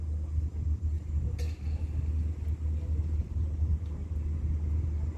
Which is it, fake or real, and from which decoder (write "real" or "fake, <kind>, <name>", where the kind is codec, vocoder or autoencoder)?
real